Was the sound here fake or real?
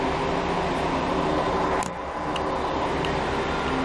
real